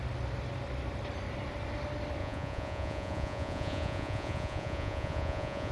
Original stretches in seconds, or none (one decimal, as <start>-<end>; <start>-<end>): 0.0-2.2